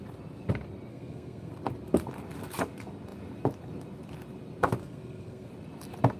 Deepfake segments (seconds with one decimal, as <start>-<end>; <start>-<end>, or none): 0.9-1.5; 4.8-5.5

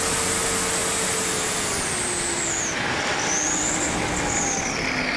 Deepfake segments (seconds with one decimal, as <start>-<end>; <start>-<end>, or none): 0.8-3.9